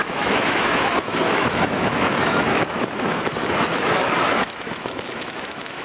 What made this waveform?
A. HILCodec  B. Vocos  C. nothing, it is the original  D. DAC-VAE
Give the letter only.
D